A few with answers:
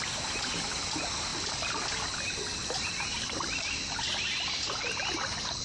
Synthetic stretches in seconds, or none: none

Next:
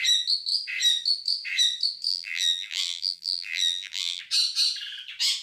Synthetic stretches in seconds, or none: 2.1-4.2 (vocoder, BigVGAN v2)

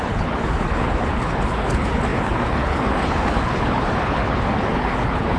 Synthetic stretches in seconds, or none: 0.0-5.4 (codec, HILCodec)

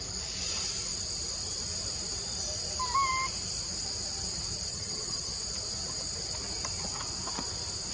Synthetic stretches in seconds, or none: 4.7-5.3 (vocoder, HiFi-GAN)